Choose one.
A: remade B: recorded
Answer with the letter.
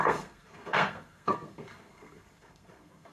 A